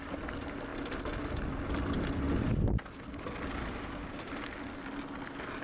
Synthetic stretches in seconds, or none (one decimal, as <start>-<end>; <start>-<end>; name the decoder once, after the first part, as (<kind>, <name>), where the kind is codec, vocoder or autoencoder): none